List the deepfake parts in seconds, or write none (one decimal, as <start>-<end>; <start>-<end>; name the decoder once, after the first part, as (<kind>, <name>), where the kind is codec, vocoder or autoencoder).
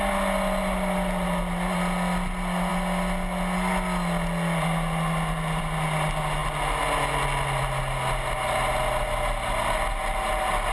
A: none